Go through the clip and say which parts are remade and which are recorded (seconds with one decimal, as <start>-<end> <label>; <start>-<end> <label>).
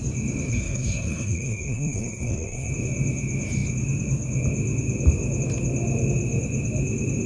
0.0-0.5 recorded; 0.5-2.7 remade; 2.7-7.3 recorded